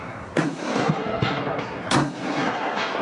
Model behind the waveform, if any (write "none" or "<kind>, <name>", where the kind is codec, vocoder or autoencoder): codec, SNAC